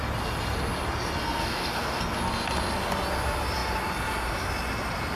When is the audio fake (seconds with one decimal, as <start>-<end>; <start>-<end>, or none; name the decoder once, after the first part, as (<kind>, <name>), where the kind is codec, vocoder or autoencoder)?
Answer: 1.4-2.0 (codec, DAC)